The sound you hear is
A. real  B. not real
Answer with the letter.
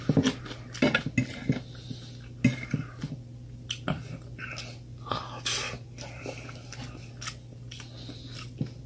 A